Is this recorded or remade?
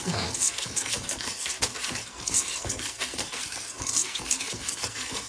remade